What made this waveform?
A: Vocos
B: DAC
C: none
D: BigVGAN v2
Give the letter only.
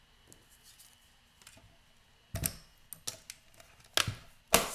C